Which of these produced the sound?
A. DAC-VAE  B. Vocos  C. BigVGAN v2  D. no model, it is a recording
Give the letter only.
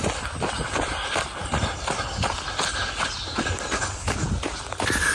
D